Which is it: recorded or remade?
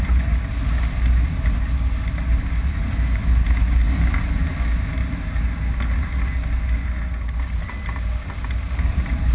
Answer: recorded